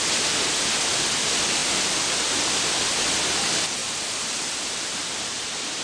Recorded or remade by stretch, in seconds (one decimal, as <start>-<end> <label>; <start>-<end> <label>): 0.0-3.8 recorded; 3.8-5.0 remade; 5.0-5.8 recorded